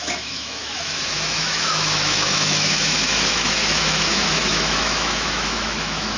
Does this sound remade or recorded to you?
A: remade